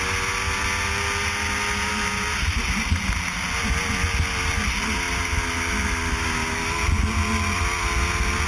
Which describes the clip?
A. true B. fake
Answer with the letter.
A